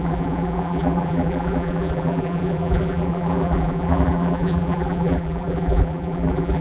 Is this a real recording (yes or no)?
no